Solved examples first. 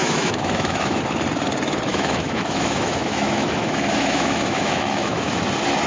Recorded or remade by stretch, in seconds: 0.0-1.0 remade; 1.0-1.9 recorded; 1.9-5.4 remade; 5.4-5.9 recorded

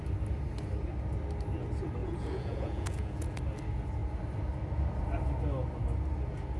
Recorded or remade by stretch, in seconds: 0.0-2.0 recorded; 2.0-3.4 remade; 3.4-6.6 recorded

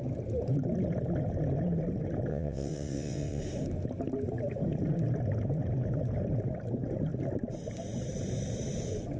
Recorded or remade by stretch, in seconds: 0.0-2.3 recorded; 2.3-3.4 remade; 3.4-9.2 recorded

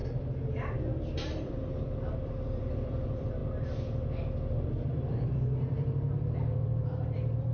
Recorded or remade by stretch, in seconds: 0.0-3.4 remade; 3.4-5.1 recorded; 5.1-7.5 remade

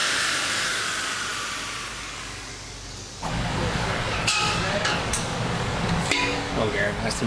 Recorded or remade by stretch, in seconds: 0.0-1.3 remade; 1.3-1.9 recorded; 1.9-7.3 remade